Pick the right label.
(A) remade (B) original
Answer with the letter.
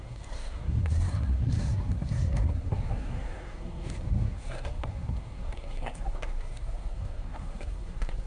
A